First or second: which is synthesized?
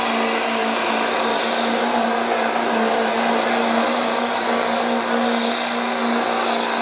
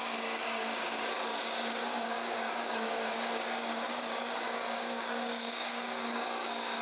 second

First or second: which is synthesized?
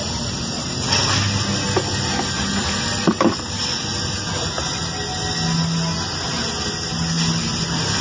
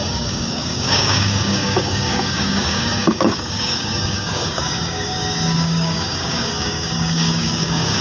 second